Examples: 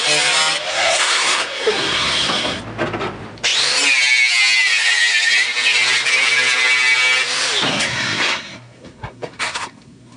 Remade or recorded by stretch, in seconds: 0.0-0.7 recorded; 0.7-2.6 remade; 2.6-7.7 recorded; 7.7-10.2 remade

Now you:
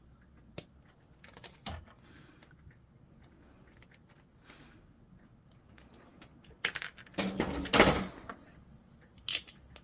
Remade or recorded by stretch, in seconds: 0.0-9.8 recorded

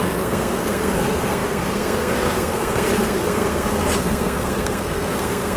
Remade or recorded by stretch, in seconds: 0.0-5.6 remade

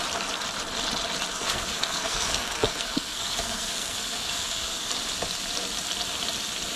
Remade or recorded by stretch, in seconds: 0.0-1.3 recorded; 1.3-4.9 remade; 4.9-6.8 recorded